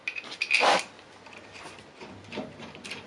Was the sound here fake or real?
real